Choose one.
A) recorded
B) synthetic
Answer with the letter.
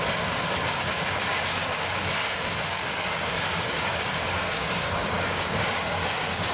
B